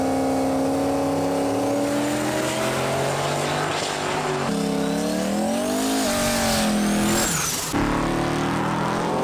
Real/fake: real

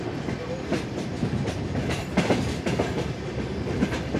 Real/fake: fake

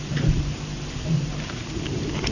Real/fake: fake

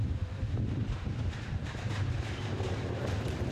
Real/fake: fake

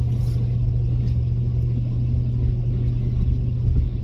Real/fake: real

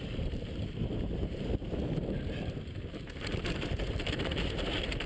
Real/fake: fake